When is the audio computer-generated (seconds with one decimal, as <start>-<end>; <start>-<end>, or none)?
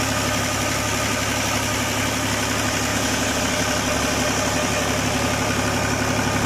2.9-3.4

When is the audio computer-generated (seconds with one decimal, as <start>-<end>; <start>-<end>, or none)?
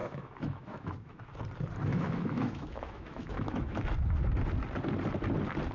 0.0-1.4; 1.9-3.8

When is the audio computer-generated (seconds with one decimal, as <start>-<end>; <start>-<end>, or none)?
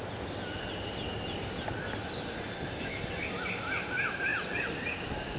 none